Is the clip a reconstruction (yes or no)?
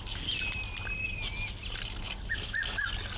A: no